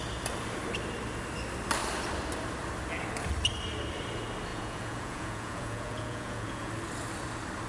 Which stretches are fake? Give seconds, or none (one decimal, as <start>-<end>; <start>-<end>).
4.5-6.7